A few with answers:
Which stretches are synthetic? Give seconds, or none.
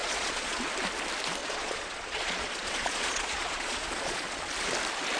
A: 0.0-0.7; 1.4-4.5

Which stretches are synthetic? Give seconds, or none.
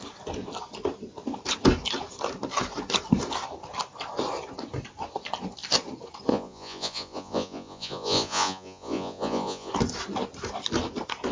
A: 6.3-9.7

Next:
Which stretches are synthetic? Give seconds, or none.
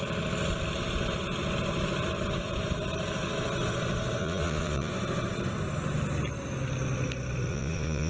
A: 4.2-4.9; 7.5-8.1